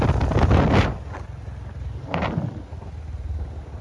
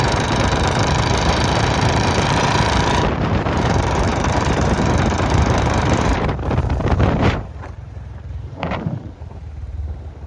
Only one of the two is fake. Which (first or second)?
second